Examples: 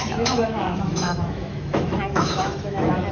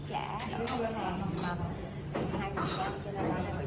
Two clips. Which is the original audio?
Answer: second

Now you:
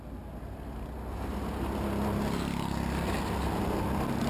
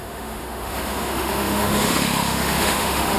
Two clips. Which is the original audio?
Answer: first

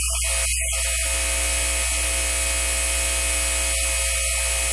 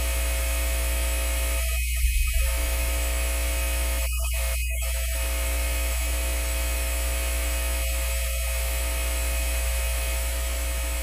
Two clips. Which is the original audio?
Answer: first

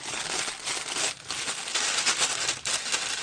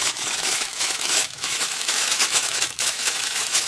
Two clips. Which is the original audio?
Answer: first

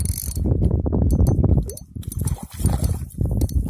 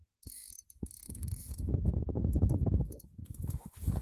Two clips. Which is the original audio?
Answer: first